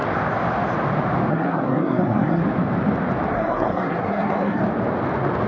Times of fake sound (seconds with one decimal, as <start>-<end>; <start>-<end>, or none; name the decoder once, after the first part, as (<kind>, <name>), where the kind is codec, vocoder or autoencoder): 1.3-2.4 (codec, SNAC); 3.3-4.6